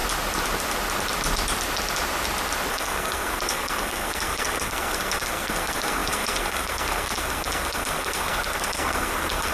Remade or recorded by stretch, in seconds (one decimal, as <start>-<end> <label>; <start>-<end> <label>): 0.0-2.7 recorded; 2.7-9.5 remade